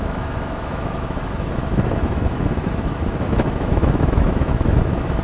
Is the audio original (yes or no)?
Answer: no